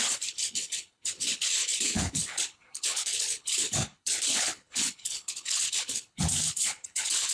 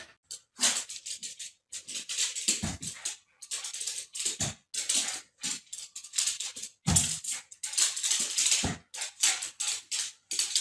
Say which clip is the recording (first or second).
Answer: second